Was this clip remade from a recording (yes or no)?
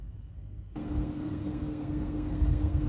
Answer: yes